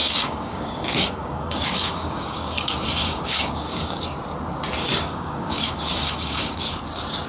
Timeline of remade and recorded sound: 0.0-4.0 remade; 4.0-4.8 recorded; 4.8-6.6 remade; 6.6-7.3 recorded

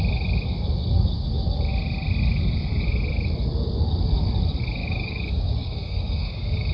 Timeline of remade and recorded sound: 0.0-4.8 recorded; 4.8-6.7 remade

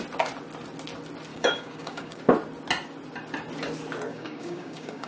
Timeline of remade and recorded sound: 0.0-1.3 recorded; 1.3-2.2 remade; 2.2-4.1 recorded; 4.1-5.1 remade

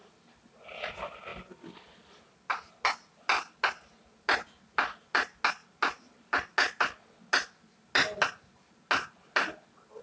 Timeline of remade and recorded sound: 0.0-10.0 recorded

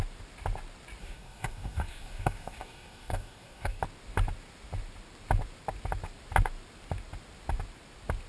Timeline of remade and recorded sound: 0.0-1.0 recorded; 1.0-3.8 remade; 3.8-8.3 recorded

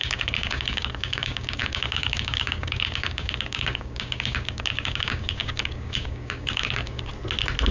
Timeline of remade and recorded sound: 0.0-7.1 remade; 7.1-7.7 recorded

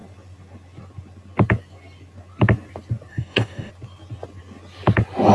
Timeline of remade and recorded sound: 0.0-3.1 recorded; 3.1-3.7 remade; 3.7-5.3 recorded